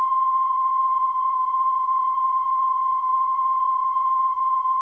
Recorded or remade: remade